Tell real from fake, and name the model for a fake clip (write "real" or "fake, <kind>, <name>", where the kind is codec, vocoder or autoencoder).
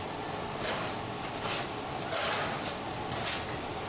real